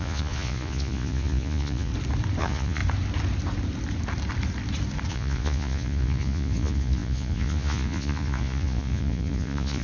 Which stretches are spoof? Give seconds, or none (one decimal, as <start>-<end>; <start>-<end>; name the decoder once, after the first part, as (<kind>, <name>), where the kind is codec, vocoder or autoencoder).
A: 0.0-1.9 (vocoder, Vocos); 2.4-2.8; 5.1-9.8